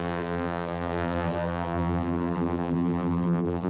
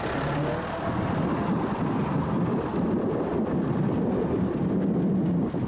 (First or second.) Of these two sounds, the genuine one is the second